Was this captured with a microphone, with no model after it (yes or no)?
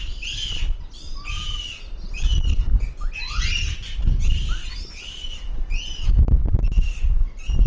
yes